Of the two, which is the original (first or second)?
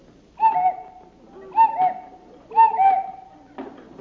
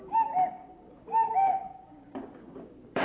first